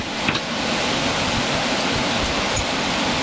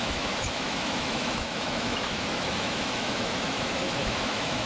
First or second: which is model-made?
second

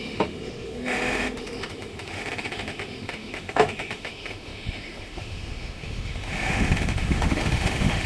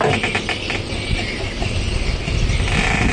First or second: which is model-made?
first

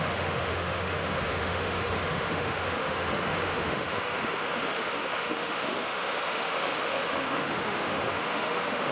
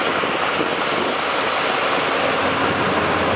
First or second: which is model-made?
first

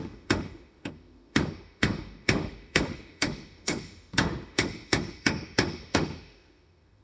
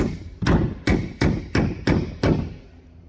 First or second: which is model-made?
first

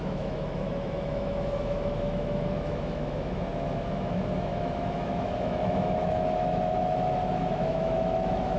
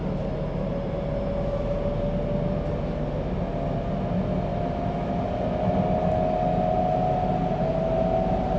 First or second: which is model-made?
first